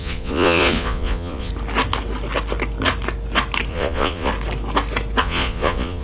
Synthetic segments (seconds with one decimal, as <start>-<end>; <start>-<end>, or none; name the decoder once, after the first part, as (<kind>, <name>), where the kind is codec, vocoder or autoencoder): 0.0-1.5 (vocoder, Vocos); 3.7-4.3; 5.2-6.0